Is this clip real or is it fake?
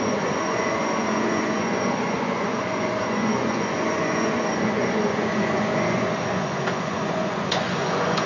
fake